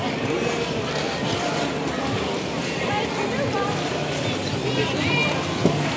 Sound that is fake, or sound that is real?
real